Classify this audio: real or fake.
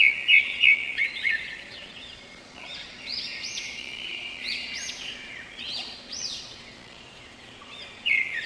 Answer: fake